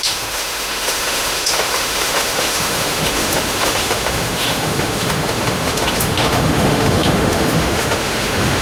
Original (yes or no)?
no